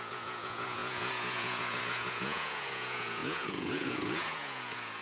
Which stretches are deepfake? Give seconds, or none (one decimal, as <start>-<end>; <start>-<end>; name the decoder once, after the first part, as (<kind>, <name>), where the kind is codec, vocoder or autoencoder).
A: 0.0-5.0 (vocoder, Vocos)